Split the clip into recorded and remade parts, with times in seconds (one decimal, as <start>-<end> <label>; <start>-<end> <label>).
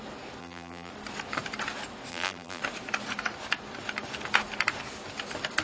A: 0.0-0.4 recorded; 0.4-0.9 remade; 0.9-2.1 recorded; 2.1-2.6 remade; 2.6-5.6 recorded